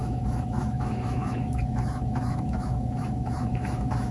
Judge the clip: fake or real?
fake